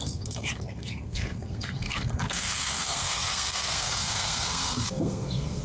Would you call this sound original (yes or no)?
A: no